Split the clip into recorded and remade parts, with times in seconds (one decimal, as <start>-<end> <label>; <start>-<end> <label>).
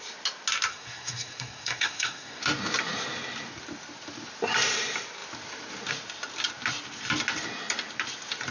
0.0-0.7 recorded; 0.7-2.4 remade; 2.4-8.5 recorded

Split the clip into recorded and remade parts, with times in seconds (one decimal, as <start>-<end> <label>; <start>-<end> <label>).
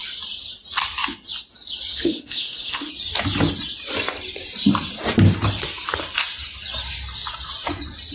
0.0-1.9 recorded; 1.9-2.9 remade; 2.9-8.1 recorded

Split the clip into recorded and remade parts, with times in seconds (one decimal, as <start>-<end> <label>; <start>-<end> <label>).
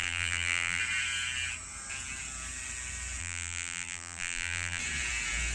0.0-0.8 remade; 0.8-3.2 recorded; 3.2-4.8 remade; 4.8-5.5 recorded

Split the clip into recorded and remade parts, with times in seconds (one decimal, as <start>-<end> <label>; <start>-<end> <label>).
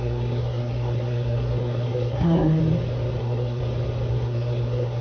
0.0-2.6 remade; 2.6-3.2 recorded; 3.2-3.6 remade; 3.6-4.1 recorded; 4.1-5.0 remade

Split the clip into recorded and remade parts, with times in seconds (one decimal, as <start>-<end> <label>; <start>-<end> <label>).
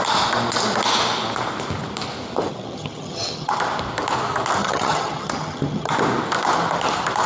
0.0-2.5 recorded; 2.5-3.5 remade; 3.5-4.6 recorded; 4.6-5.9 remade; 5.9-7.3 recorded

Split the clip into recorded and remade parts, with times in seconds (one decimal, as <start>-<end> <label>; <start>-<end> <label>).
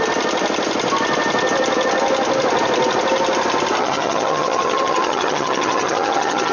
0.0-3.8 recorded; 3.8-6.5 remade